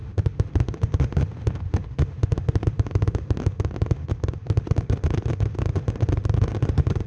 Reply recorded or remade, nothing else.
remade